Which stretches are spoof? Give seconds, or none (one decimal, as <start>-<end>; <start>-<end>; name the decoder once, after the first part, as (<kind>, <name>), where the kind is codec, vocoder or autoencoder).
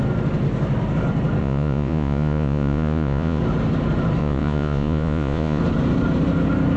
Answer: 1.4-3.4 (vocoder, Vocos); 4.2-5.6